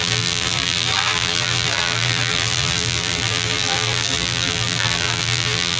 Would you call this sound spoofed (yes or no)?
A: yes